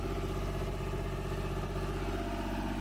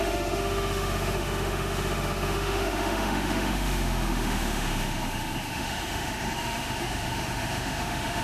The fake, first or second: second